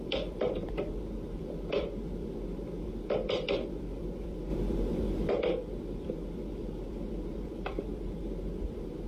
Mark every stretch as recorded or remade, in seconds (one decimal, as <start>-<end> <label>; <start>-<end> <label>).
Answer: 0.0-9.1 remade